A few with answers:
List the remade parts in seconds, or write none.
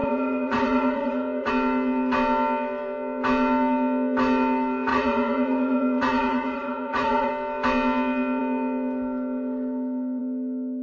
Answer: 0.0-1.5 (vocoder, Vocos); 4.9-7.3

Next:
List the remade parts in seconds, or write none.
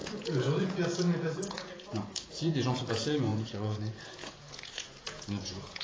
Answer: 0.0-5.8 (vocoder, Vocos)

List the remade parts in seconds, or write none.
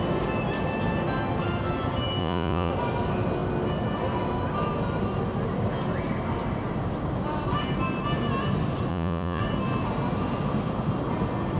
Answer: 2.2-2.7 (vocoder, Vocos); 8.9-9.4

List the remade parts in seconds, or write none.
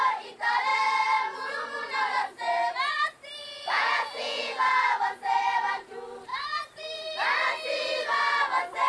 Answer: 3.4-5.0 (vocoder, Vocos)